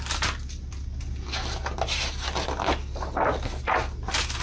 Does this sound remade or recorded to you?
recorded